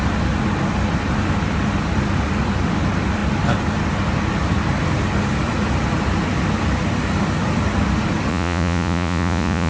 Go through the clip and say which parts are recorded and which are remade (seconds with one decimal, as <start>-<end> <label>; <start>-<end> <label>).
0.0-8.3 recorded; 8.3-9.7 remade